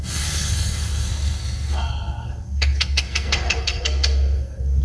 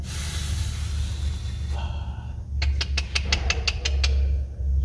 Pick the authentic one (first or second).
second